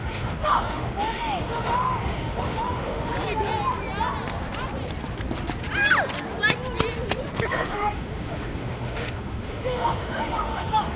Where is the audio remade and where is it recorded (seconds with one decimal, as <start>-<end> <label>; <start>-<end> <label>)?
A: 0.0-3.1 remade; 3.1-7.5 recorded; 7.5-11.0 remade

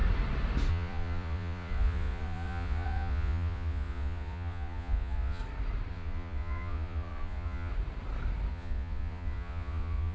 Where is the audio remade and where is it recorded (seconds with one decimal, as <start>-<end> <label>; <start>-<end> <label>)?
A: 0.0-0.7 recorded; 0.7-5.4 remade; 5.4-5.9 recorded; 5.9-7.7 remade; 7.7-8.5 recorded; 8.5-10.1 remade

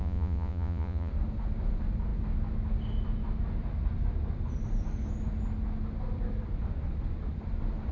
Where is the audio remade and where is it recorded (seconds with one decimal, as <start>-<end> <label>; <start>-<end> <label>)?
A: 0.0-1.1 remade; 1.1-7.9 recorded